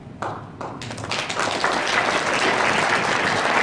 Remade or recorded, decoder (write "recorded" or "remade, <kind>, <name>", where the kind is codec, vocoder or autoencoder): recorded